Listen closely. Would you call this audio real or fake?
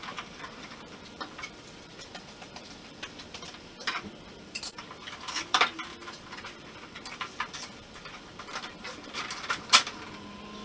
fake